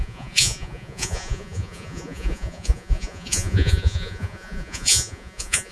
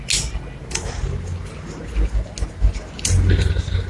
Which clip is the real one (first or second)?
second